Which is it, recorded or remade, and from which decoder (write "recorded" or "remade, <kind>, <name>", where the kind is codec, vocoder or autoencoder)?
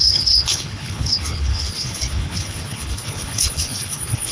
remade, codec, HILCodec